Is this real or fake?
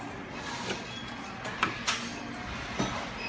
real